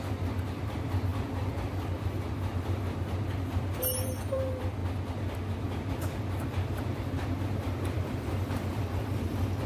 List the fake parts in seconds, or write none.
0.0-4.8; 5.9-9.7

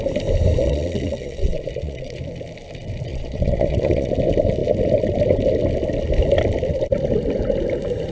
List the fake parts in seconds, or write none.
0.6-2.2; 3.1-4.1